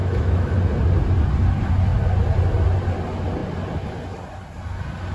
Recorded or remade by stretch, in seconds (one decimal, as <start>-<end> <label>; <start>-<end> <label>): 0.0-0.5 remade; 0.5-5.1 recorded